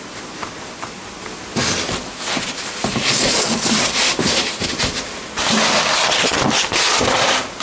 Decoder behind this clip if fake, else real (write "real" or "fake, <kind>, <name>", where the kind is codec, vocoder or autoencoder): real